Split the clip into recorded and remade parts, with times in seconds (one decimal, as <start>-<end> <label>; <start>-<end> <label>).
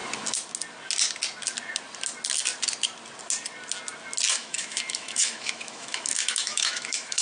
0.0-4.3 recorded; 4.3-7.2 remade